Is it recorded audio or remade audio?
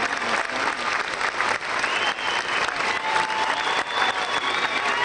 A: recorded